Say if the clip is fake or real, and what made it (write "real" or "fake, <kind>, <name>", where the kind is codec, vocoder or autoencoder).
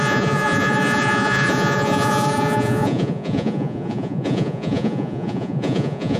fake, vocoder, Vocos